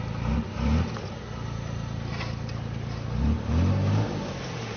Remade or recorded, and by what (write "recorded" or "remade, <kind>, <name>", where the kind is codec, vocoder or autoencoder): recorded